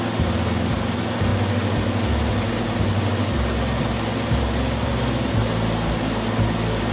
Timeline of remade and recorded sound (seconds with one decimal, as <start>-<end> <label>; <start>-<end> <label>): 0.0-6.9 recorded